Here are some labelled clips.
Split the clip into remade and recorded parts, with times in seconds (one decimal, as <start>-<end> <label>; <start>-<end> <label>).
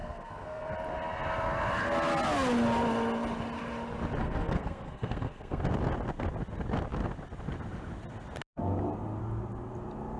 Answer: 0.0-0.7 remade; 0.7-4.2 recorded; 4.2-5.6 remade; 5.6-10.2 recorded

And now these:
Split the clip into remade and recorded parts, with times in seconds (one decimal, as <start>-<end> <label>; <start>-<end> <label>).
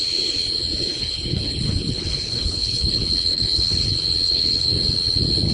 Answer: 0.0-0.9 recorded; 0.9-3.8 remade; 3.8-4.2 recorded; 4.2-4.7 remade; 4.7-5.5 recorded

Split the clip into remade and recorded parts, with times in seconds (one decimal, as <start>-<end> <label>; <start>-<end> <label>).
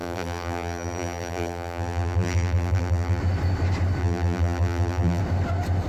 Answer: 0.0-3.2 remade; 3.2-4.0 recorded; 4.0-5.2 remade; 5.2-5.9 recorded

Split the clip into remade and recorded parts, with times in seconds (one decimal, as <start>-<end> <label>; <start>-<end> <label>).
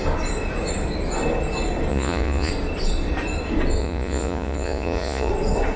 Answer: 0.0-1.9 recorded; 1.9-2.5 remade; 2.5-3.8 recorded; 3.8-5.3 remade; 5.3-5.8 recorded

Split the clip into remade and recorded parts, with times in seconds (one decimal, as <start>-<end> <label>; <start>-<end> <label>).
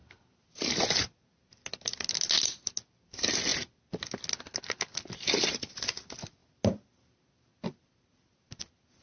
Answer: 0.0-9.0 recorded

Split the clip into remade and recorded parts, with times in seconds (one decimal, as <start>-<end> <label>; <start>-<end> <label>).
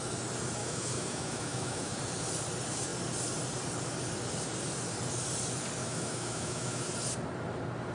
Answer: 0.0-0.6 recorded; 0.6-2.0 remade; 2.0-5.8 recorded; 5.8-6.9 remade; 6.9-7.9 recorded